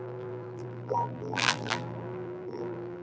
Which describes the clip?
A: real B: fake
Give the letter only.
B